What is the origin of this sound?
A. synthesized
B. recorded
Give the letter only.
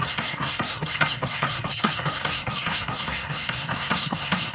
A